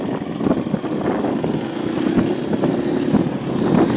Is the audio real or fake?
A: real